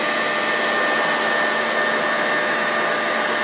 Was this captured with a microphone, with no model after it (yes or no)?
yes